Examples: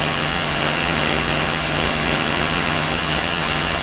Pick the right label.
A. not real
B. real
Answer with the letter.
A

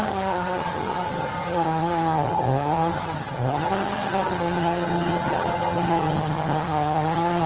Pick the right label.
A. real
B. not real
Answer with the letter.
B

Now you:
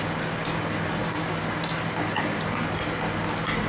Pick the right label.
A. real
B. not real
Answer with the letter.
A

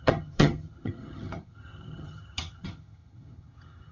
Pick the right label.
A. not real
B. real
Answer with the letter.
A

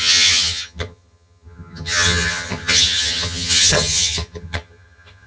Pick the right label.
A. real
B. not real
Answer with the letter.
B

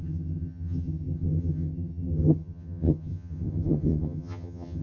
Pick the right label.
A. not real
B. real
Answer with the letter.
A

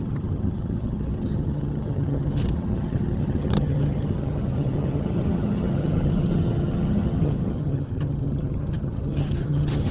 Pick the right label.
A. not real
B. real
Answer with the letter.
A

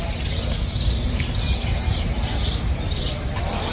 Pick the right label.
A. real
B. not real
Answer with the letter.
A